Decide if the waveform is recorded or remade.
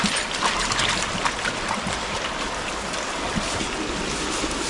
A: recorded